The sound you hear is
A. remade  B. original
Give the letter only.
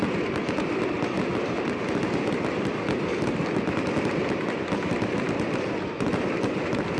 B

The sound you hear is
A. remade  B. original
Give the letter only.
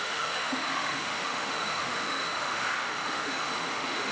A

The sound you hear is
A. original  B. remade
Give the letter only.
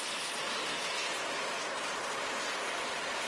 A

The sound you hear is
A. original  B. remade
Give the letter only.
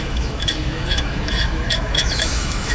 B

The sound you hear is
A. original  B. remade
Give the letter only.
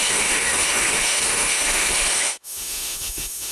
B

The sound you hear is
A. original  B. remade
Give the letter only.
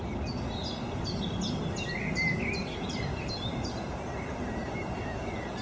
A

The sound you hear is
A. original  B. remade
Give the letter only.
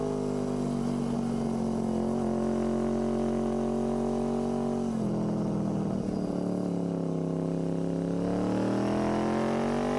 A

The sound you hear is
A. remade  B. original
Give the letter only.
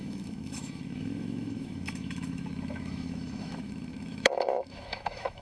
A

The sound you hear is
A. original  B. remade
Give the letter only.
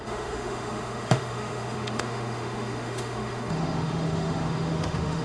B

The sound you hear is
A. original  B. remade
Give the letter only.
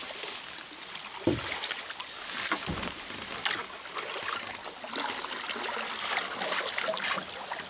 A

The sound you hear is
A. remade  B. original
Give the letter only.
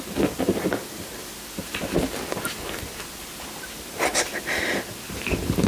B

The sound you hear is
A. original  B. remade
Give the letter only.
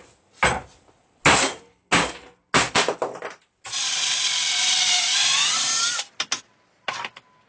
A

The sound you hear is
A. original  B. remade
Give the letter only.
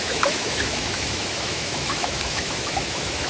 B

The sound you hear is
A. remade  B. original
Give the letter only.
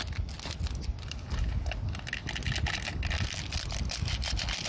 B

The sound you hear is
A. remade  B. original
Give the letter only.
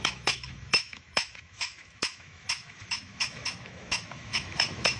A